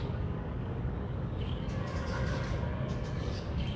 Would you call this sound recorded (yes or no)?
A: no